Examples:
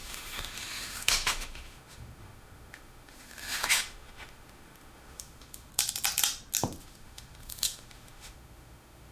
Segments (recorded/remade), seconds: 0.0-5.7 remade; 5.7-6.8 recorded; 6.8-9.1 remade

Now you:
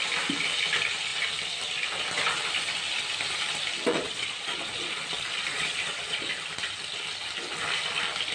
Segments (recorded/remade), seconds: 0.0-3.9 recorded; 3.9-5.1 remade; 5.1-5.5 recorded; 5.5-6.3 remade; 6.3-8.3 recorded

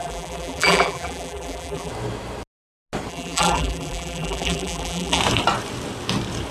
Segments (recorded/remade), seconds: 0.0-1.9 remade; 1.9-3.1 recorded; 3.1-5.2 remade; 5.2-6.5 recorded

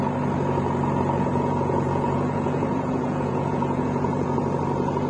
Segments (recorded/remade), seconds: 0.0-1.3 recorded; 1.3-4.4 remade; 4.4-5.1 recorded

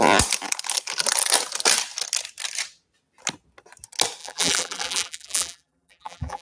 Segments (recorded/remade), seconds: 0.0-4.2 recorded; 4.2-6.4 remade

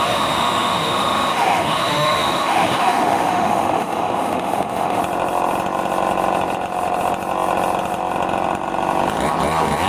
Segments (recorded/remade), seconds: 0.0-5.0 remade; 5.0-9.9 recorded